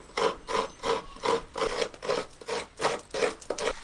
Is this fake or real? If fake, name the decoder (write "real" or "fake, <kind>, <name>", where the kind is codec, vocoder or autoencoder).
real